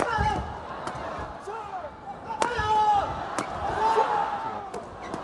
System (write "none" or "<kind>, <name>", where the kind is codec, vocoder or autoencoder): none